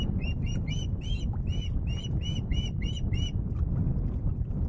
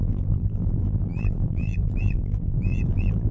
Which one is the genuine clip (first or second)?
first